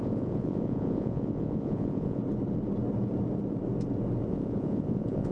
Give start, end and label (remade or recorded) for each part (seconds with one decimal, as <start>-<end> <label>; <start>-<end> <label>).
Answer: 0.0-2.2 remade; 2.2-4.3 recorded; 4.3-5.3 remade